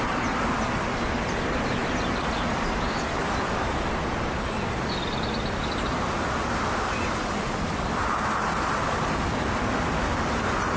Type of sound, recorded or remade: recorded